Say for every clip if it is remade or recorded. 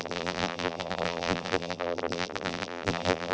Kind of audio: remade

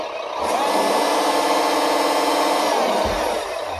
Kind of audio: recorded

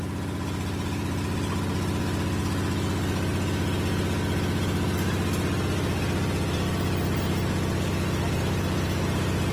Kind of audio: recorded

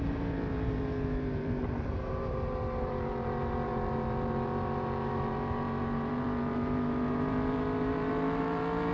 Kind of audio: remade